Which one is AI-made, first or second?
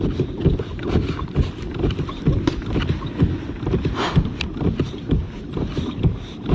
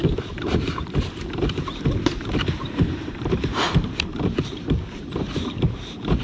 second